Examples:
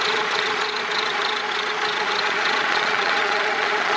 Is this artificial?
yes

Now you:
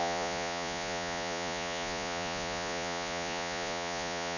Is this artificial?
yes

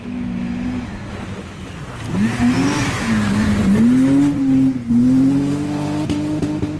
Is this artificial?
no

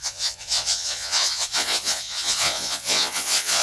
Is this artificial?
yes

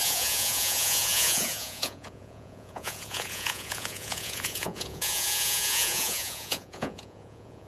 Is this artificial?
yes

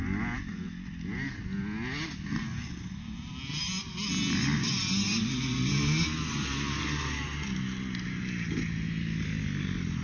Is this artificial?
no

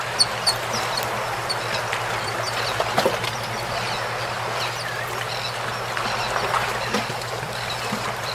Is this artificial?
no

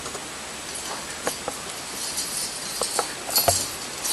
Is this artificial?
no